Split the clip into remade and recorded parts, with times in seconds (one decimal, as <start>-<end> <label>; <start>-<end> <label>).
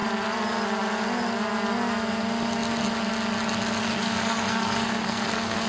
0.0-3.8 recorded; 3.8-5.7 remade